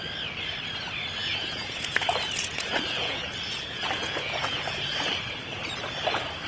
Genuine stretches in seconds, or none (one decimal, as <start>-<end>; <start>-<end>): 0.0-1.2; 5.1-6.5